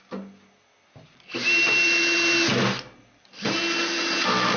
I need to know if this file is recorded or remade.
recorded